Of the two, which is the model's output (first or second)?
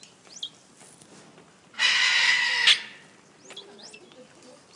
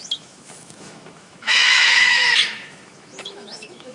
second